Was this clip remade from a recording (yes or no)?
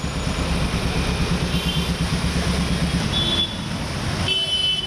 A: no